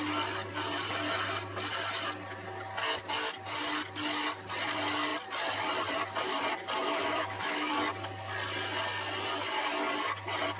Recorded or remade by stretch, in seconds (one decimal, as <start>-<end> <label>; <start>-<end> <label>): 0.0-6.8 recorded; 6.8-7.7 remade; 7.7-10.6 recorded